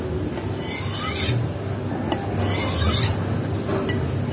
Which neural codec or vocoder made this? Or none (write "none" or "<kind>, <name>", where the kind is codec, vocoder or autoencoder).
none